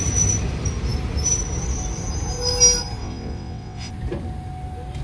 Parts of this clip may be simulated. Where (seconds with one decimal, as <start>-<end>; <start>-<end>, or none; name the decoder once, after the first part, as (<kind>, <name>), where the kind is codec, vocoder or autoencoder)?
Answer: 3.0-3.9 (vocoder, WaveNeXt)